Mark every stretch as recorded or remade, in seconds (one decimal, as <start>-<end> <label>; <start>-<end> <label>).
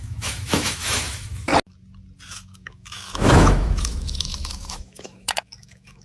0.0-1.5 remade; 1.5-2.3 recorded; 2.3-6.0 remade